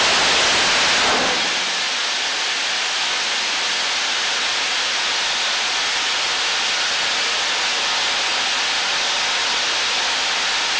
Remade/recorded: recorded